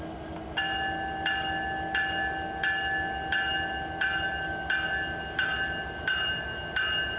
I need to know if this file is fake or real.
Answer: real